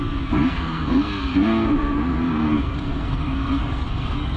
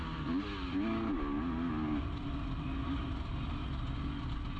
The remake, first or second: first